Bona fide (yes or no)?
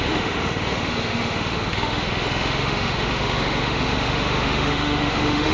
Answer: no